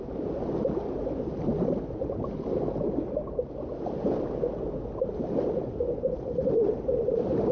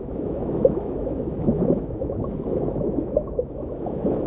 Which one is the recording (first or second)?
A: first